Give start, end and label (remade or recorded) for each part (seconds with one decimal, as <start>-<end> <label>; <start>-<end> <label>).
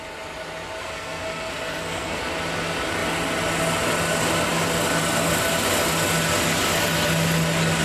0.0-0.8 recorded; 0.8-2.2 remade; 2.2-7.8 recorded